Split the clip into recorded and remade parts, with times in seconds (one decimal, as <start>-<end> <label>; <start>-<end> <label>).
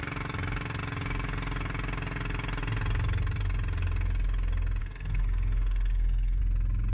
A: 0.0-4.8 recorded; 4.8-6.4 remade; 6.4-6.9 recorded